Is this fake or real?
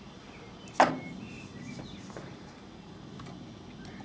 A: real